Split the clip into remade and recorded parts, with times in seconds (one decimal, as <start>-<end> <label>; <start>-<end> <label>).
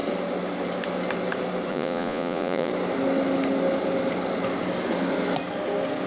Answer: 0.0-1.7 recorded; 1.7-2.7 remade; 2.7-6.1 recorded